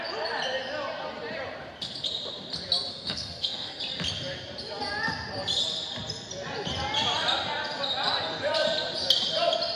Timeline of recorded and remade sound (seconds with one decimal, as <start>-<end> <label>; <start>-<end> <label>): 0.0-2.9 recorded; 2.9-3.8 remade; 3.8-9.8 recorded